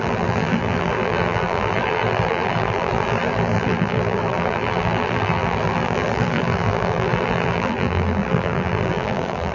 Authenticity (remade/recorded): remade